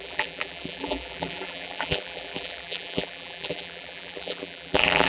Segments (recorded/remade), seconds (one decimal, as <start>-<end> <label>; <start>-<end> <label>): 0.0-5.1 remade